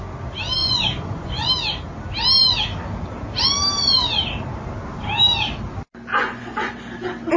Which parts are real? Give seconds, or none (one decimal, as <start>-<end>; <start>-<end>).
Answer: 0.0-0.6; 1.5-6.1; 6.7-7.4